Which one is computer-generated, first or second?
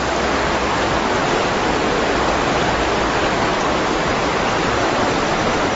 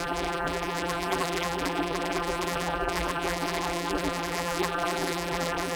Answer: second